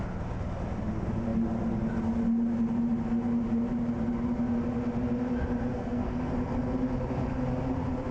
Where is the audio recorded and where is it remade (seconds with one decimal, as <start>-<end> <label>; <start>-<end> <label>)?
0.0-5.7 recorded; 5.7-6.3 remade; 6.3-8.1 recorded